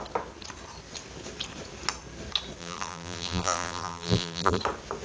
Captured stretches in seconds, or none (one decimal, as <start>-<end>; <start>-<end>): 0.0-2.6; 4.6-5.0